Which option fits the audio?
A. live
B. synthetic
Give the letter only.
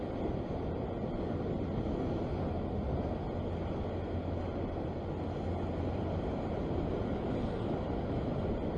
A